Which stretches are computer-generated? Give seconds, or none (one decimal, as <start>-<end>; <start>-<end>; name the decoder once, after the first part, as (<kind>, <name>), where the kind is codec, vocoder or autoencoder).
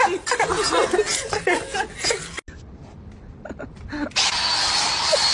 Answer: none